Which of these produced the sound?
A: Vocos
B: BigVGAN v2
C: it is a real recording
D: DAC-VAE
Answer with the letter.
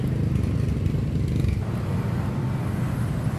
C